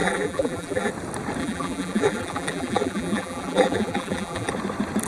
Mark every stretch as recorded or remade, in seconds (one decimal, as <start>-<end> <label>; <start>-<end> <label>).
0.0-0.9 remade; 0.9-1.4 recorded; 1.4-4.5 remade; 4.5-5.1 recorded